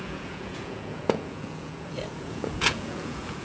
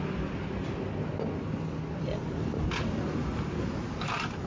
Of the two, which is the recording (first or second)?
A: second